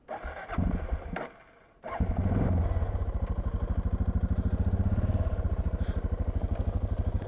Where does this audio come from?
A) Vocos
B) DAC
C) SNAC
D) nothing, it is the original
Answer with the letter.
D